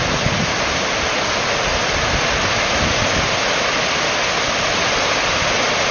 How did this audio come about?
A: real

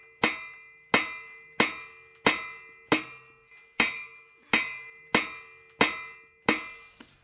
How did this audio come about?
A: real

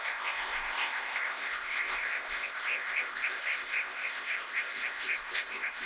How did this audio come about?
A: fake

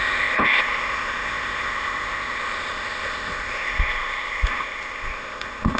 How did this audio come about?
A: fake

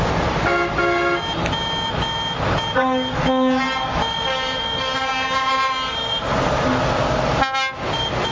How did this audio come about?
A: real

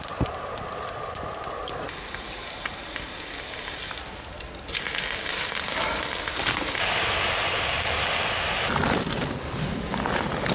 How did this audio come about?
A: real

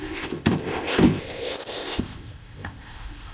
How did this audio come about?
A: fake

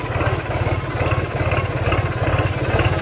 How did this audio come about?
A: real